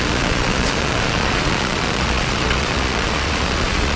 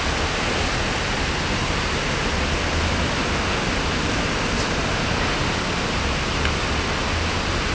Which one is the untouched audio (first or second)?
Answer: second